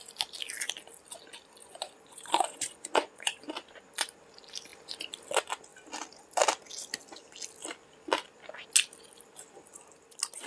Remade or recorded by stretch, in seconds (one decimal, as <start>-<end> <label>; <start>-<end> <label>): 0.0-1.6 recorded; 1.6-3.4 remade; 3.4-10.5 recorded